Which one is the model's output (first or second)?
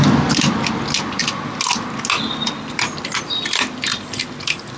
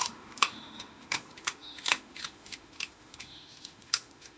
second